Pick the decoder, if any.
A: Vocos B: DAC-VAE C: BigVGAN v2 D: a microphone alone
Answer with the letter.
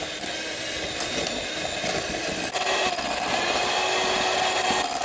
D